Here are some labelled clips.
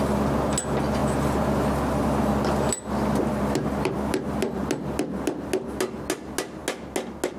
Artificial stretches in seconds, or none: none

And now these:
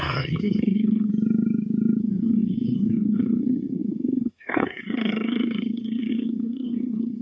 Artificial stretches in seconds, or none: 0.0-1.1 (codec, SNAC); 2.0-7.2

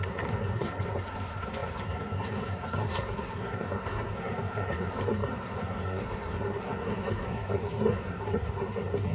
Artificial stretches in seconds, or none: 0.0-9.1 (codec, SNAC)